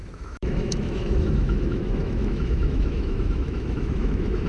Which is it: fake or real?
fake